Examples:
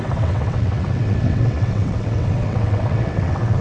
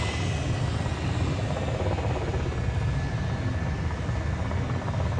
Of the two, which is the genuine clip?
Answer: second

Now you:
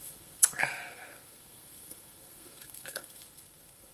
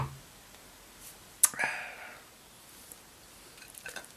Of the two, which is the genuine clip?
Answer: second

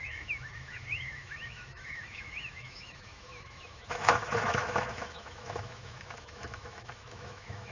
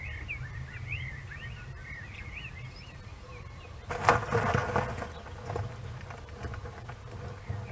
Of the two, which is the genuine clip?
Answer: second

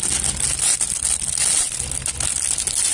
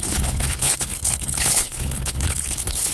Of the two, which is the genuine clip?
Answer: first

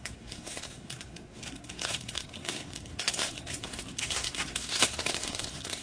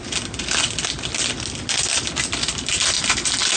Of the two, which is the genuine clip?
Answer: second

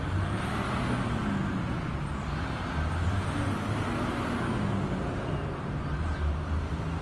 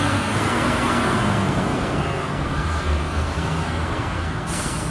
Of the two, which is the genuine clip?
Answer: first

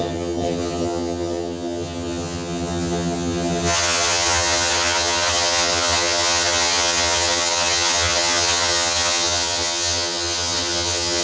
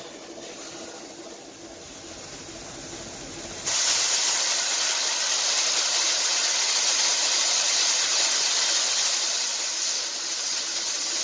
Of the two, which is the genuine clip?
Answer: second